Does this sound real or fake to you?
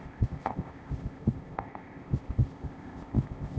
fake